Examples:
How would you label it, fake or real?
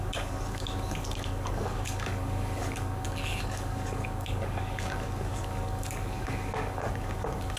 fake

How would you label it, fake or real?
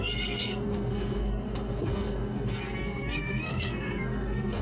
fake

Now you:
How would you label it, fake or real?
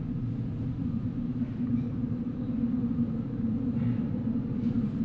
fake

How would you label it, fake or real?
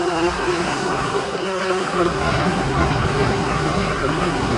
fake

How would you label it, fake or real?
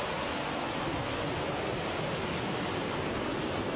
real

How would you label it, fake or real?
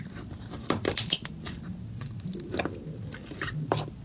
real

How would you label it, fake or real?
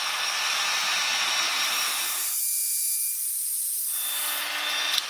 real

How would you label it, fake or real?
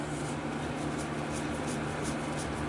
real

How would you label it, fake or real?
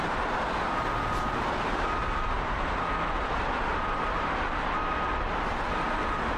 real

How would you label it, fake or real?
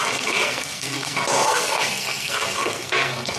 fake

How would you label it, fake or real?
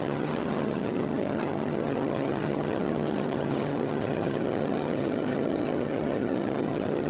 fake